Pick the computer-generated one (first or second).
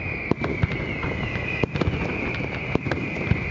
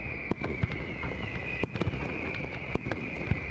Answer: second